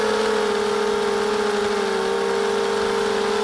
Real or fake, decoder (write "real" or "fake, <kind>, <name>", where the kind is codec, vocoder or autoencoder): real